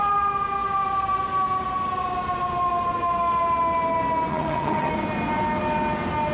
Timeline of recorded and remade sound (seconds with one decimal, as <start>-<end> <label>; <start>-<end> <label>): 0.0-4.3 recorded; 4.3-4.9 remade; 4.9-6.3 recorded